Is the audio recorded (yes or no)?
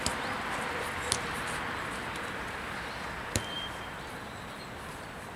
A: no